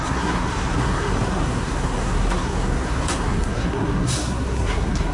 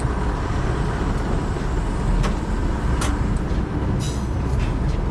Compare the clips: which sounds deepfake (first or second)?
first